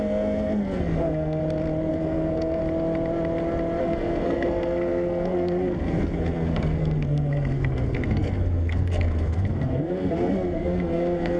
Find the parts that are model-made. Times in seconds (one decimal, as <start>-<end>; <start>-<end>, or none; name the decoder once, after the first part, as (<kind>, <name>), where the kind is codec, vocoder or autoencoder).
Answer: 0.0-1.4 (codec, SNAC); 1.9-2.6; 3.8-11.4